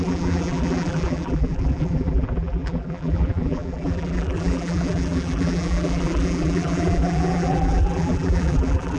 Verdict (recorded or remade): remade